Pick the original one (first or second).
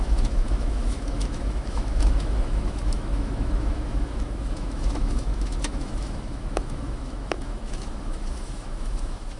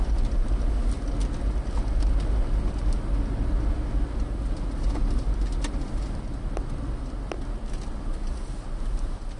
second